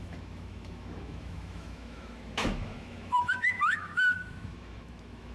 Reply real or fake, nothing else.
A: fake